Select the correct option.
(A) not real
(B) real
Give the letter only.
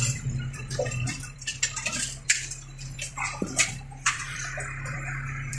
A